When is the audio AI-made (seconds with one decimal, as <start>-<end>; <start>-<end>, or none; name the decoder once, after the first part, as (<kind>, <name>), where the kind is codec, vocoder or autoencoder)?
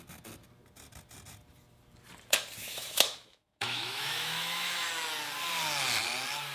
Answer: 2.6-4.9 (autoencoder, DAC-VAE)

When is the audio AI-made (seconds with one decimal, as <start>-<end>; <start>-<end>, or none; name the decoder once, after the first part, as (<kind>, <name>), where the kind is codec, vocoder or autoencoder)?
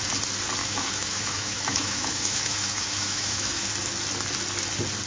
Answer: 0.6-3.7 (autoencoder, DAC-VAE)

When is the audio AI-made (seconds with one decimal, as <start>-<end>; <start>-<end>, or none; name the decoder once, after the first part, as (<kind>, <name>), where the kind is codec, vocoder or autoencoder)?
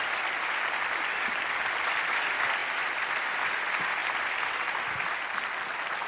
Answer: none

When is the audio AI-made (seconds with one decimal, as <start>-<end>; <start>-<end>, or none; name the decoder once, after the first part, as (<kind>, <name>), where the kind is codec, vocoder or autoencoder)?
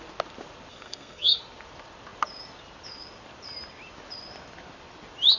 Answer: 0.7-1.4 (codec, SNAC)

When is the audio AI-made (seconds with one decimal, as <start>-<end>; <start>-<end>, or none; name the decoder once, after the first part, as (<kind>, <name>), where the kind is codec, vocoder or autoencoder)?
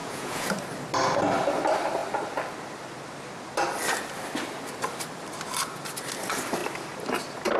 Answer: 0.0-0.5 (vocoder, Vocos)